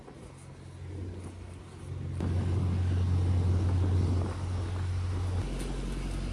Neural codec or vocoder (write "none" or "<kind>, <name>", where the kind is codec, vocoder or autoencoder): none